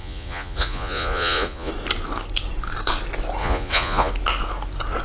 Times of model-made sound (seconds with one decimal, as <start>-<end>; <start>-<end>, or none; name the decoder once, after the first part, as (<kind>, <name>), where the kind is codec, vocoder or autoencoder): 0.0-1.7 (vocoder, Vocos); 3.4-4.1